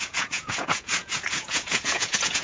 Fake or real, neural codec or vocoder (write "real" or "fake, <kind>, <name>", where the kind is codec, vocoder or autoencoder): fake, vocoder, Vocos